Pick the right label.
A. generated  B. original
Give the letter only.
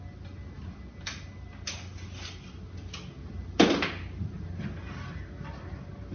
B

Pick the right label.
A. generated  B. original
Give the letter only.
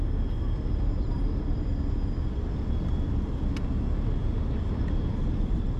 B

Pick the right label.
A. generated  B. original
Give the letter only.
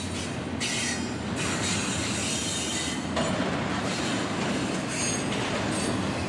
B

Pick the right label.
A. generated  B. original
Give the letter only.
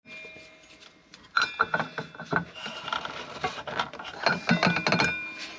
B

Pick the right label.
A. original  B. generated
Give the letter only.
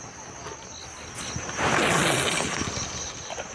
A